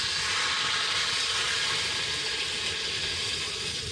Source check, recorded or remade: recorded